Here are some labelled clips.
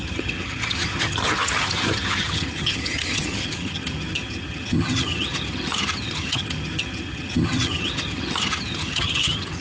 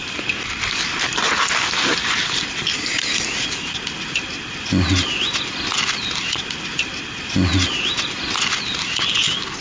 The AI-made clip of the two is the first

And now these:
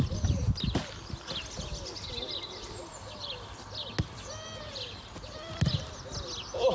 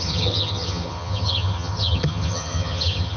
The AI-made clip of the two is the second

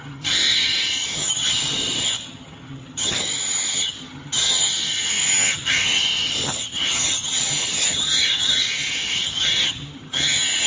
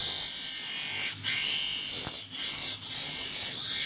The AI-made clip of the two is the first